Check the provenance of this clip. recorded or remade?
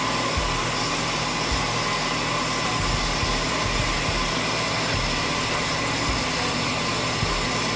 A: recorded